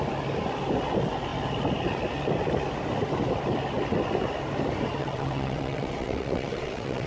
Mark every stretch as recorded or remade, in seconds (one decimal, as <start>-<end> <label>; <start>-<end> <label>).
0.0-5.0 recorded; 5.0-7.1 remade